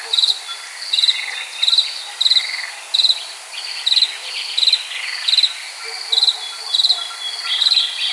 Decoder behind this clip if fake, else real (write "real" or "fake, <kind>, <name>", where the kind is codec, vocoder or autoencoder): real